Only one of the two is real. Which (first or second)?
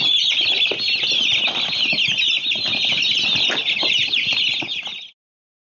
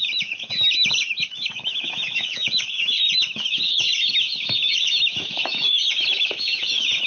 first